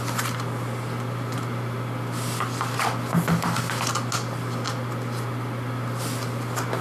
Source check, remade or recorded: recorded